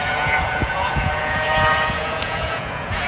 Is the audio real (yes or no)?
no